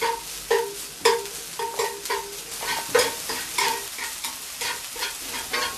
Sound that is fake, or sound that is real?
real